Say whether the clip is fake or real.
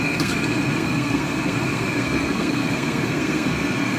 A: fake